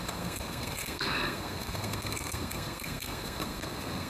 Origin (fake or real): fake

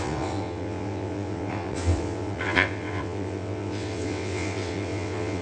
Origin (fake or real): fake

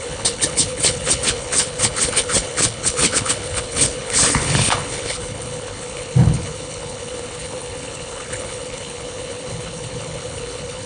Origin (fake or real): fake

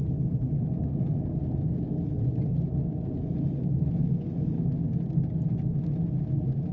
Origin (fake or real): real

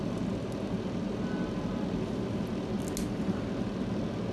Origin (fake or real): real